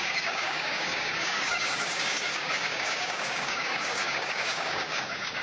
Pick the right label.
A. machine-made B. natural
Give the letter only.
A